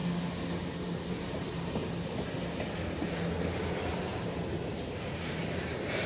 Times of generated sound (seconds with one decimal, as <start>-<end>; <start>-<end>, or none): 0.5-1.8; 3.9-6.1